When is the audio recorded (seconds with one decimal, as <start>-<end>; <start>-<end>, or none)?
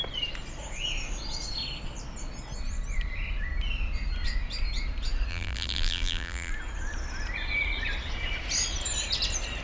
0.0-5.3; 6.5-9.6